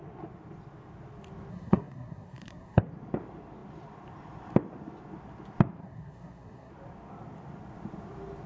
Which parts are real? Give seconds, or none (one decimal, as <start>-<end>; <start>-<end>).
0.0-1.5; 2.8-5.8; 6.7-8.5